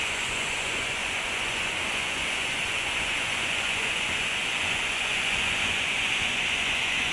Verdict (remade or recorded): remade